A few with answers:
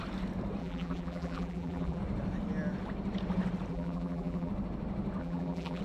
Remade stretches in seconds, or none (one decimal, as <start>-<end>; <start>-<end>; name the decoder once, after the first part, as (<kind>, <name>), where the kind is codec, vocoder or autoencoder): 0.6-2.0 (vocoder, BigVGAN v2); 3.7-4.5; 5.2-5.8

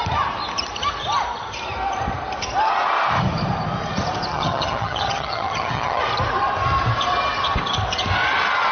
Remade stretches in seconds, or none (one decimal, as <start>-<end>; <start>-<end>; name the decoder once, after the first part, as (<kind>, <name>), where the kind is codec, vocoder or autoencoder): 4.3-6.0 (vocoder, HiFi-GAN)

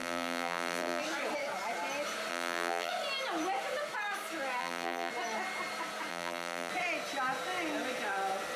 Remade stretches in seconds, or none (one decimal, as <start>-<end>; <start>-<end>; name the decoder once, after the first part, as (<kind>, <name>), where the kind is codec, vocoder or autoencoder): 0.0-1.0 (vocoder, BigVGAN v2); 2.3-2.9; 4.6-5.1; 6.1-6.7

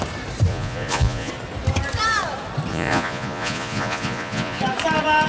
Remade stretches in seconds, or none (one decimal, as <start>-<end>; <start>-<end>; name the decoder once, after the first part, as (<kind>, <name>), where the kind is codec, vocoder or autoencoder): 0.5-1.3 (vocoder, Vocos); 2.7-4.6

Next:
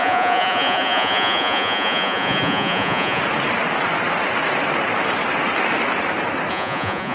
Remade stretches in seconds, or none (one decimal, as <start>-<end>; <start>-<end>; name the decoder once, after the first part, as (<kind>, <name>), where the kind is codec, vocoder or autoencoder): 0.0-3.2 (vocoder, Vocos); 6.5-7.1